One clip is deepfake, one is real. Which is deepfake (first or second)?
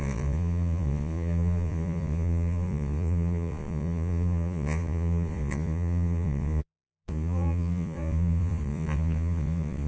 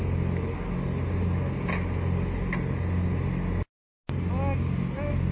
first